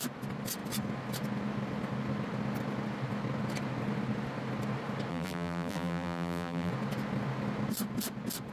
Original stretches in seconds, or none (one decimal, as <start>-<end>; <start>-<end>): 0.0-5.1; 6.7-8.5